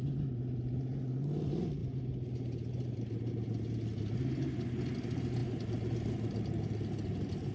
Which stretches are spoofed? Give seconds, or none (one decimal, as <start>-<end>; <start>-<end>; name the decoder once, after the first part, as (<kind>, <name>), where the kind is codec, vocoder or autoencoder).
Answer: none